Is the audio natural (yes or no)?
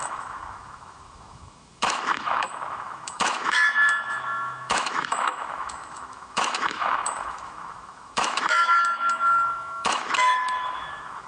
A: no